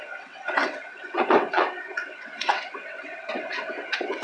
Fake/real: fake